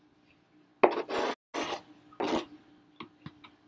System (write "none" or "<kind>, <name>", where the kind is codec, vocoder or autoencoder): none